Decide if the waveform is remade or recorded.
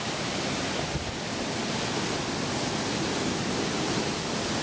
recorded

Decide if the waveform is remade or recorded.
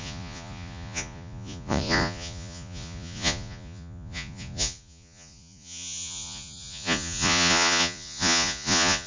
remade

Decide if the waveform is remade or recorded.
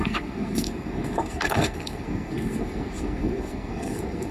remade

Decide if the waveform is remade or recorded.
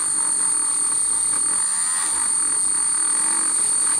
recorded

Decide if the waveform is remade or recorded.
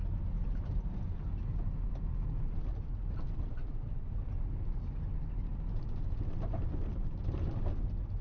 recorded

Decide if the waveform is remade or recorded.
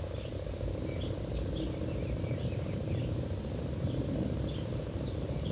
recorded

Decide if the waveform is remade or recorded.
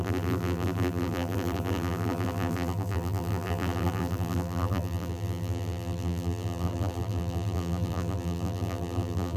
remade